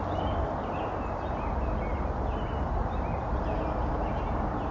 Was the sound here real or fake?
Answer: real